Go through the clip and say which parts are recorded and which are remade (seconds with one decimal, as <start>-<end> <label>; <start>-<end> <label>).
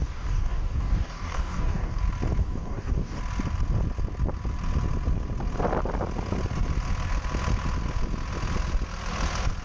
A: 0.0-2.0 remade; 2.0-2.4 recorded; 2.4-3.2 remade; 3.2-9.6 recorded